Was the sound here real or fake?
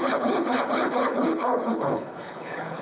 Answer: fake